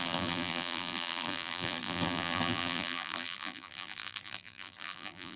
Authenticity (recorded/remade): remade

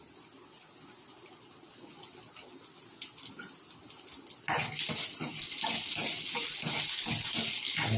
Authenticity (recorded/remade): recorded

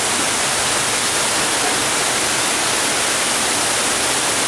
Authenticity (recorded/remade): recorded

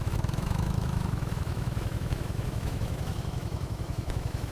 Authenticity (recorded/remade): remade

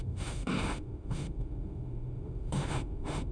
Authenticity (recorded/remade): remade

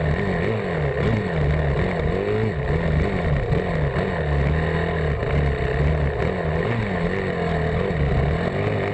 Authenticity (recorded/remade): recorded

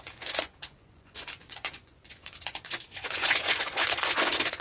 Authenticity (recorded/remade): remade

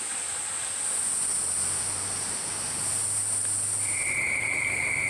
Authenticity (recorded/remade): recorded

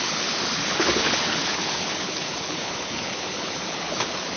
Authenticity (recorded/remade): remade